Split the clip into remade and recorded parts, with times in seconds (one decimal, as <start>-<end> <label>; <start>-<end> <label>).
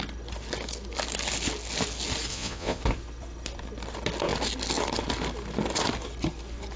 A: 0.0-2.3 recorded; 2.3-2.8 remade; 2.8-6.8 recorded